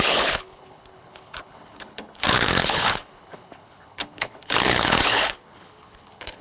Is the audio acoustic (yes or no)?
no